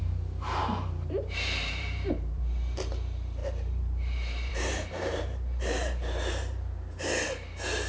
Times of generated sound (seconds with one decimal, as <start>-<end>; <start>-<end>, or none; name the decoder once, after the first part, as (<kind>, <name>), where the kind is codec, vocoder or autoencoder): 0.0-7.9 (vocoder, BigVGAN v2)